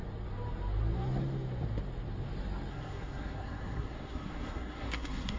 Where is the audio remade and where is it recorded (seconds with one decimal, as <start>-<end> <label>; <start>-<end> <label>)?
0.0-2.7 recorded; 2.7-5.4 remade